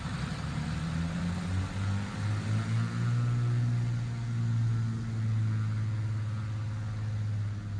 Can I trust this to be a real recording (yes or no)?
yes